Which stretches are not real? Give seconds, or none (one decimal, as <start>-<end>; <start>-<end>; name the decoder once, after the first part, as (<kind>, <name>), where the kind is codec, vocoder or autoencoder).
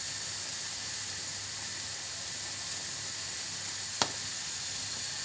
none